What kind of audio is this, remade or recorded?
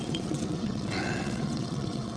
remade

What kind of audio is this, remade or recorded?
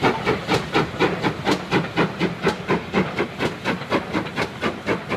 recorded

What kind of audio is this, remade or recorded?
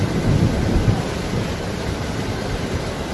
recorded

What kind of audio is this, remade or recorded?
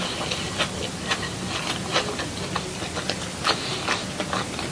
recorded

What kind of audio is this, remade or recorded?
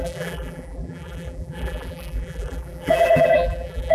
remade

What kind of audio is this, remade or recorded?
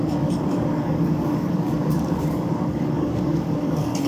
remade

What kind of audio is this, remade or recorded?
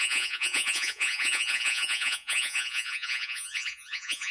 remade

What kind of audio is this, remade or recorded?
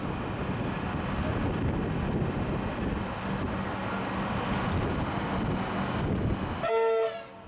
recorded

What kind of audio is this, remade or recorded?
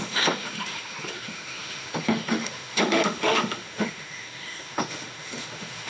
remade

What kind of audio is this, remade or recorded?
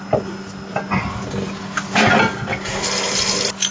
recorded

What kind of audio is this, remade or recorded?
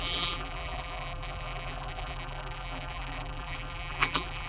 remade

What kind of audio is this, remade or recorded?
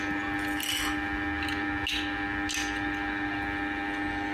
recorded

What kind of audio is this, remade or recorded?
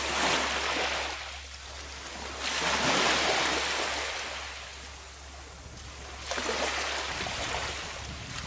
recorded